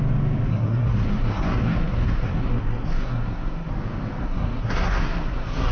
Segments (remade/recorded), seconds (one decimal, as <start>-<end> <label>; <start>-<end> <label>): 0.0-0.5 recorded; 0.5-3.7 remade; 3.7-4.2 recorded; 4.2-5.7 remade